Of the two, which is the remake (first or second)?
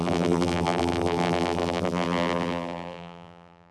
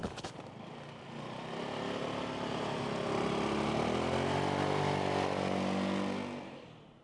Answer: first